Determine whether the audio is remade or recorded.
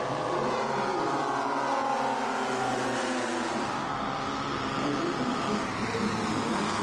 recorded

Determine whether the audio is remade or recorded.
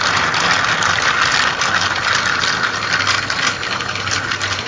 recorded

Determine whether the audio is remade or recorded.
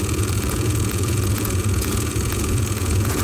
remade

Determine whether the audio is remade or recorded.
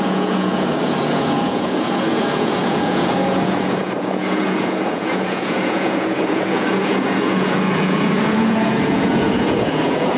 remade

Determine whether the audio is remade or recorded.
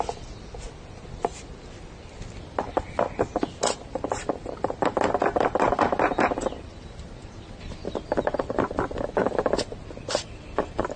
recorded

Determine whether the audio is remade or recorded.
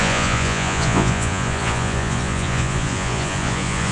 remade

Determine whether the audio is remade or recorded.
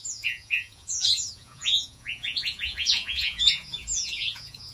remade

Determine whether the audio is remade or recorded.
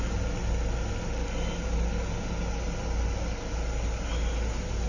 recorded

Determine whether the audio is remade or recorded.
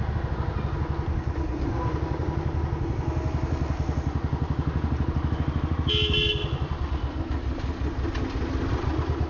recorded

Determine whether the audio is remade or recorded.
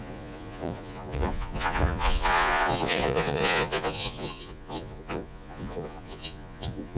remade